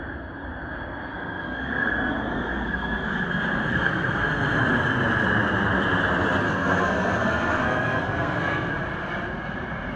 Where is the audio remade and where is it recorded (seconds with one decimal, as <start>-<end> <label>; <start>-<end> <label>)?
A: 0.0-1.1 recorded; 1.1-3.3 remade; 3.3-3.7 recorded; 3.7-4.3 remade; 4.3-6.4 recorded; 6.4-8.7 remade; 8.7-10.0 recorded